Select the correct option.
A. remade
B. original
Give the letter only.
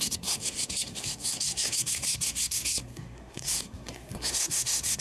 A